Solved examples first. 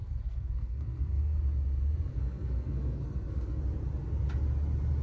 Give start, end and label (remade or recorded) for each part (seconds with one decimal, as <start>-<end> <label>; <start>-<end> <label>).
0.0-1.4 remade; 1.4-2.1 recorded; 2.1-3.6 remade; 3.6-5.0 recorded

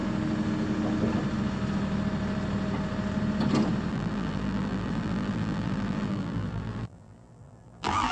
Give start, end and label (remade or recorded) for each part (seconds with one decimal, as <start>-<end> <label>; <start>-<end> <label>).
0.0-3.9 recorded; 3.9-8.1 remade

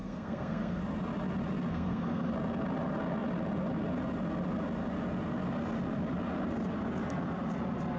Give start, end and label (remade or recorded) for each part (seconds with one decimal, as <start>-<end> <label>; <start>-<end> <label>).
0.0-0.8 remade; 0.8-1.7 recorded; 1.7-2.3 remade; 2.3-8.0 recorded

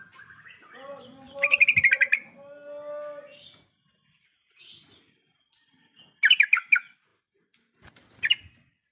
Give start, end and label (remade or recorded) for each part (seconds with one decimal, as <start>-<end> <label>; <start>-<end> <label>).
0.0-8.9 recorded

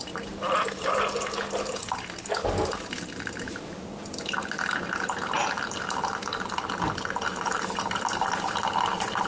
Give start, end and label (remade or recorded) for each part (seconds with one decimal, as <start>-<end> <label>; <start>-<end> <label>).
0.0-9.3 recorded

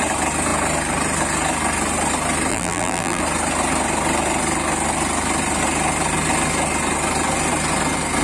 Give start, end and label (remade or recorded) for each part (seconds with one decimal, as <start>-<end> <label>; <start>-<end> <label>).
0.0-2.5 recorded; 2.5-3.2 remade; 3.2-8.2 recorded